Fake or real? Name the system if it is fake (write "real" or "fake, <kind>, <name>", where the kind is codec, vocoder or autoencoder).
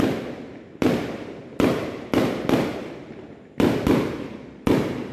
fake, vocoder, BigVGAN v2